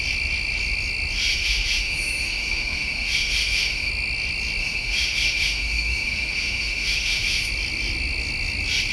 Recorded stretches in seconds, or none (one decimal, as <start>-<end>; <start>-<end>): 0.0-1.3; 3.9-4.6; 7.5-8.9

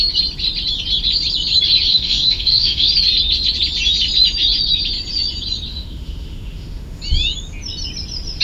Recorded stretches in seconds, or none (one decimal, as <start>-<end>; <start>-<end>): 0.0-1.9; 2.9-5.7; 7.0-8.4

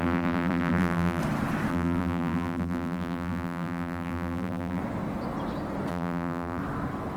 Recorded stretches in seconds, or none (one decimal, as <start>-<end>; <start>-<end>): 1.2-1.7; 4.8-5.9; 6.6-7.2

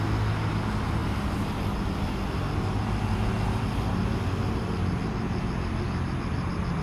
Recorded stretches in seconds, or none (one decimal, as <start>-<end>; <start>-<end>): 0.0-6.8

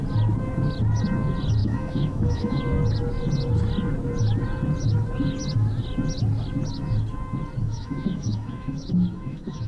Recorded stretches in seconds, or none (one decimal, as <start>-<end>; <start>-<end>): 0.0-1.6; 2.6-7.6

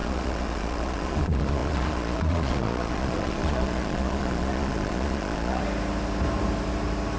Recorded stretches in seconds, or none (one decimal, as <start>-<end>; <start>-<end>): 5.6-7.2

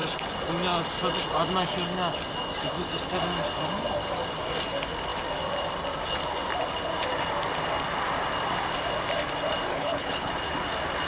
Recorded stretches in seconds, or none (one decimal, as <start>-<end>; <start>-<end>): 0.0-9.7; 10.3-11.1

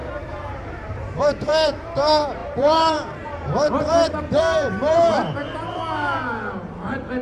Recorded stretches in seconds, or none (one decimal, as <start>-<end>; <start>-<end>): 5.4-6.5